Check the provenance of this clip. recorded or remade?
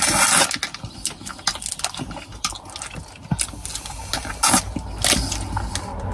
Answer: recorded